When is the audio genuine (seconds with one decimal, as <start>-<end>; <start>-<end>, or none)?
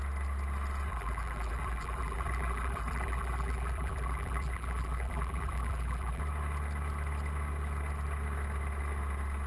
0.0-0.9; 6.2-9.5